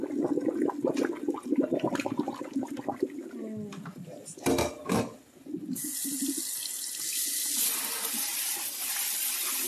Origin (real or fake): real